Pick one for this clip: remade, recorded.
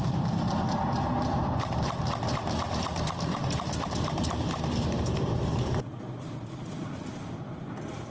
remade